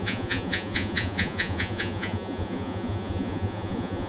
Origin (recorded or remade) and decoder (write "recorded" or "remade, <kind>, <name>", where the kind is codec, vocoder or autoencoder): remade, vocoder, Vocos